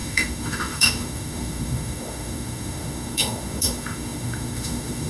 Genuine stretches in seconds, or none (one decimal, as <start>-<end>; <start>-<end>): none